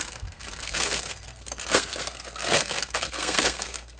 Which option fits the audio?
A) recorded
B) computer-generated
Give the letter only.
B